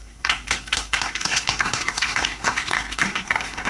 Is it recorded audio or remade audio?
remade